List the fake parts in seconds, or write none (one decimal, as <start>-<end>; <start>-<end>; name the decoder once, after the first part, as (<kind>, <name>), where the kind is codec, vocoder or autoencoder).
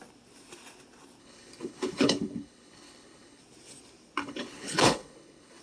1.2-3.4 (codec, HILCodec); 4.2-5.6